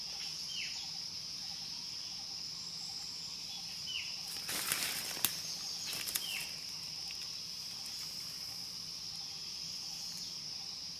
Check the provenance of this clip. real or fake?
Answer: real